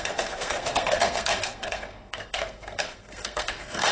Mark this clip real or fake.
fake